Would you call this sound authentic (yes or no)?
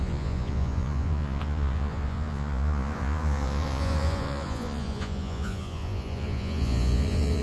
no